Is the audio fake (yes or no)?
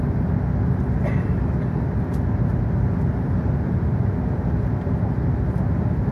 no